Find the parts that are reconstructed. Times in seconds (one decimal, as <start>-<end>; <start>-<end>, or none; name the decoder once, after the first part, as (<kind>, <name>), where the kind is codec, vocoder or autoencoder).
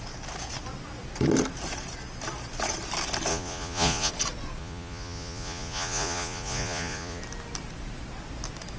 3.3-4.1 (vocoder, Vocos); 4.6-7.2